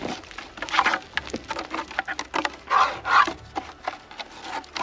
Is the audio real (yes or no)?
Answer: yes